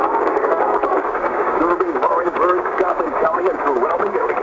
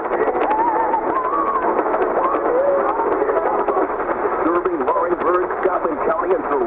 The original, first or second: second